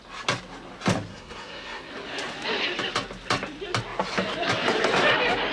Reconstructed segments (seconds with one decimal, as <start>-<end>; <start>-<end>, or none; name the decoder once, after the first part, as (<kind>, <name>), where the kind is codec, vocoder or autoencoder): 1.1-1.9 (codec, SNAC)